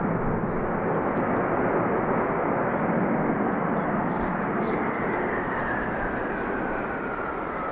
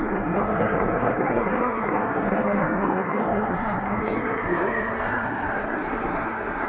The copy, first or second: second